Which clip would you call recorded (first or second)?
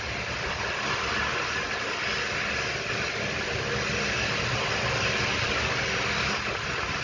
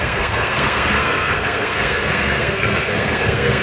first